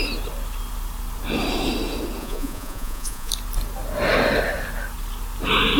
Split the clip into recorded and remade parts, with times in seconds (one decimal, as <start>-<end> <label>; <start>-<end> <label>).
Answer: 0.0-2.2 recorded; 2.2-3.3 remade; 3.3-5.8 recorded